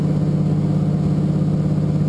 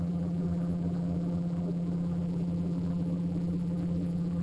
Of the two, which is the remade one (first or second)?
second